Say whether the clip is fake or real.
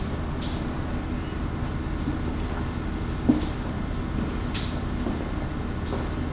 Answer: real